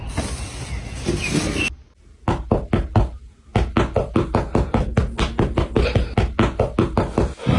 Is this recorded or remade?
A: recorded